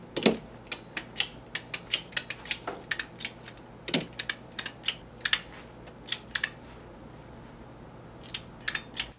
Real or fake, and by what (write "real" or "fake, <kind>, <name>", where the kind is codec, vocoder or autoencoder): real